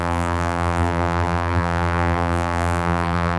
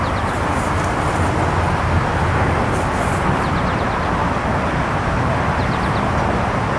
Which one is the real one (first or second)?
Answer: second